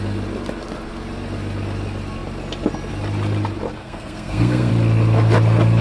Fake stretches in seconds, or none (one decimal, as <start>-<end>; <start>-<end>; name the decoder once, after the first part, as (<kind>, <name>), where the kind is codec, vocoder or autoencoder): 3.8-4.7 (codec, SNAC)